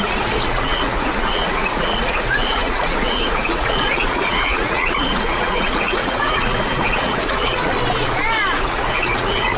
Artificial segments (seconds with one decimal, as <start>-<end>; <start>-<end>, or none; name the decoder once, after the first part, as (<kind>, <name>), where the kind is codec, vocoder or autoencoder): 0.0-7.7 (vocoder, Vocos); 8.6-9.6